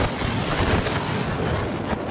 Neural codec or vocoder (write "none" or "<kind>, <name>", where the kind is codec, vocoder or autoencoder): none